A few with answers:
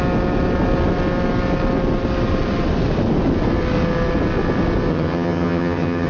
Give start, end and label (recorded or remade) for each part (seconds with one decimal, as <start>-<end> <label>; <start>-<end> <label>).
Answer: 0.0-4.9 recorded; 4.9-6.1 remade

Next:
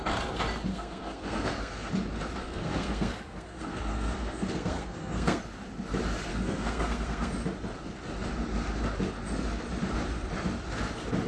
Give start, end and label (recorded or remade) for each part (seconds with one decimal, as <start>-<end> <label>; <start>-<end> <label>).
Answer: 0.0-0.7 recorded; 0.7-1.9 remade; 1.9-2.4 recorded; 2.4-5.4 remade; 5.4-6.3 recorded; 6.3-7.3 remade; 7.3-11.3 recorded

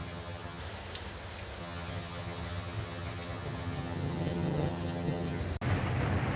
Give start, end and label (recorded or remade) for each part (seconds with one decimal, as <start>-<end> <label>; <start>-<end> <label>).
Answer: 0.0-0.6 remade; 0.6-1.6 recorded; 1.6-5.4 remade; 5.4-6.4 recorded